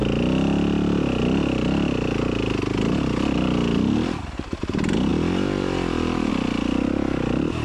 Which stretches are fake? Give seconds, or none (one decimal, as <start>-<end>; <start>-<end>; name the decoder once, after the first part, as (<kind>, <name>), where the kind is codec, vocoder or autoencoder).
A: 5.1-6.3 (vocoder, BigVGAN v2)